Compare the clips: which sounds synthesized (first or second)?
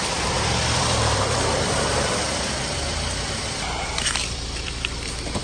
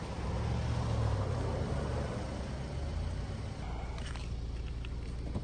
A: first